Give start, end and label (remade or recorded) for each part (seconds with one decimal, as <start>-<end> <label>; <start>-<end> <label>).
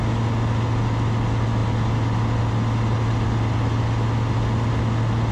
0.0-5.3 recorded